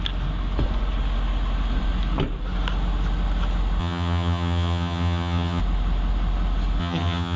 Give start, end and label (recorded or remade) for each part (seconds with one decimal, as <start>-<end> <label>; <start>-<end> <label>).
0.0-3.8 recorded; 3.8-5.6 remade; 5.6-6.8 recorded; 6.8-7.4 remade